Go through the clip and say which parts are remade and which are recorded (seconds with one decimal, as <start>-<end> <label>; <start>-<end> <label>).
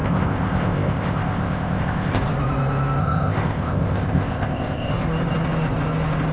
0.0-2.2 remade; 2.2-3.0 recorded; 3.0-4.9 remade; 4.9-6.3 recorded